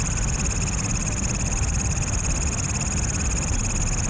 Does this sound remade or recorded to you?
recorded